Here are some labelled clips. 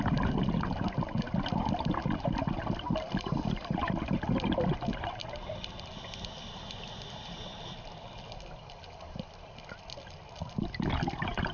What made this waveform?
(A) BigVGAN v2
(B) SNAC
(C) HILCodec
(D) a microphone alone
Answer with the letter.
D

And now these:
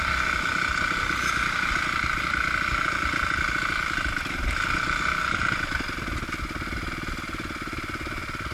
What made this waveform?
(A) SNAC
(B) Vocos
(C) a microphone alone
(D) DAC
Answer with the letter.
C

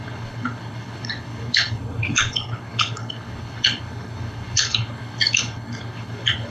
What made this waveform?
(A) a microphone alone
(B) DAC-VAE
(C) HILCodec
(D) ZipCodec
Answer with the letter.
C